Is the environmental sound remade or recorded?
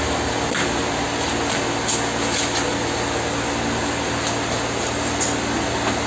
recorded